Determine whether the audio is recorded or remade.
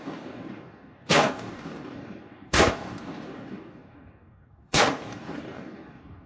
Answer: remade